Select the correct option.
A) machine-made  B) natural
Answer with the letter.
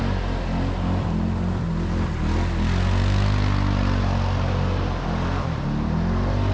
B